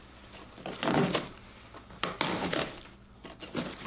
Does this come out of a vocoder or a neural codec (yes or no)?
no